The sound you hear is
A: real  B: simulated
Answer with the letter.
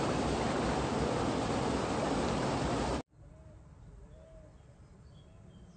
A